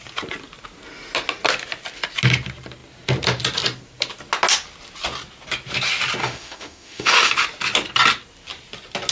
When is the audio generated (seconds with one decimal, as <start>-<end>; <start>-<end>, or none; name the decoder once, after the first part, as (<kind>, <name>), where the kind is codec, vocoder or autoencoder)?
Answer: 6.2-7.3 (autoencoder, DAC-VAE)